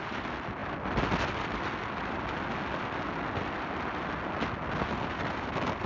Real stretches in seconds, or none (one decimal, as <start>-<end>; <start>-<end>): 0.0-5.9